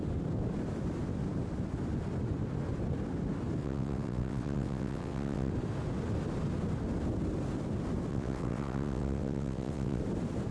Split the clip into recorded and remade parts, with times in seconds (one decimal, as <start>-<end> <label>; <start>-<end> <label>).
0.0-3.6 recorded; 3.6-5.5 remade; 5.5-8.1 recorded; 8.1-10.0 remade; 10.0-10.5 recorded